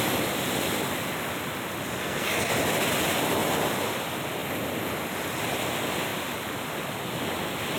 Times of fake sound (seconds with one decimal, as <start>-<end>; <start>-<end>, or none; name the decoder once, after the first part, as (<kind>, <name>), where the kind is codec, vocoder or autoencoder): 2.0-2.5 (codec, SNAC)